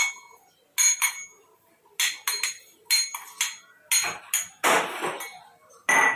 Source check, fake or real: real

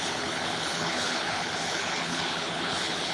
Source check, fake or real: fake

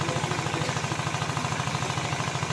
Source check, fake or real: real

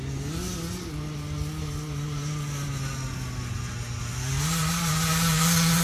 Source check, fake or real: real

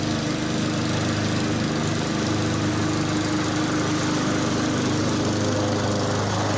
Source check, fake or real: real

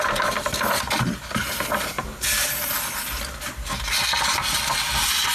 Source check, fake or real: real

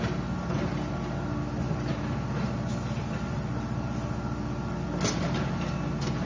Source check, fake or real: real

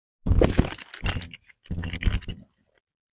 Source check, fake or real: real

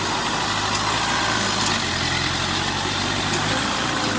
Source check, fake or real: real